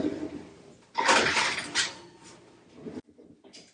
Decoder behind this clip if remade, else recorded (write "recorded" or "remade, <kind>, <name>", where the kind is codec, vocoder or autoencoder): recorded